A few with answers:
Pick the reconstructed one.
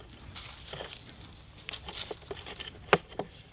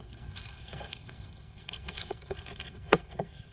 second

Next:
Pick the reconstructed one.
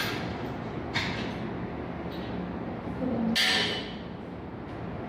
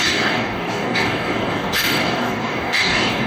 second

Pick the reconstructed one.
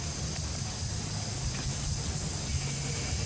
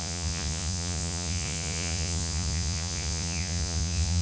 second